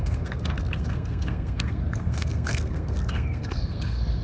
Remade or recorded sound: remade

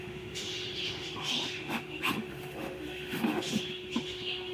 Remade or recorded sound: remade